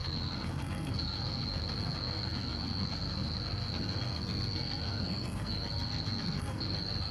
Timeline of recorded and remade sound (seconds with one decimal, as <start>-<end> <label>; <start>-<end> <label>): 0.0-7.1 remade